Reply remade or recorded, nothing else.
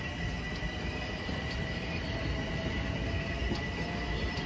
recorded